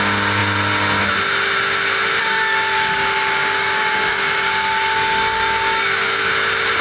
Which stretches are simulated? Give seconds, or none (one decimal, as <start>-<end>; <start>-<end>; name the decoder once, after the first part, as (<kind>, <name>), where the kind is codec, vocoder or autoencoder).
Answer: 2.2-6.3 (codec, DAC)